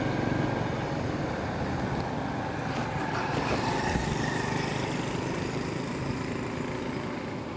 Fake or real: real